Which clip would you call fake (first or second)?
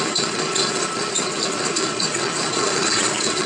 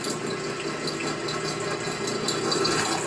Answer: first